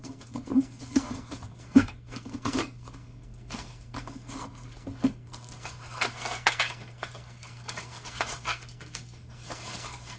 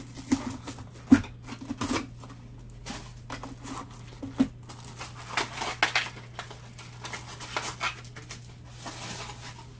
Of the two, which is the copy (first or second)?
first